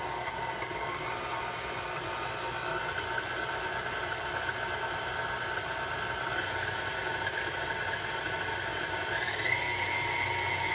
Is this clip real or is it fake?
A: real